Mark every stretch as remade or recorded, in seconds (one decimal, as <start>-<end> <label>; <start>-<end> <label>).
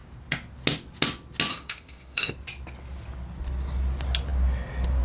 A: 0.0-1.5 recorded; 1.5-2.3 remade; 2.3-5.0 recorded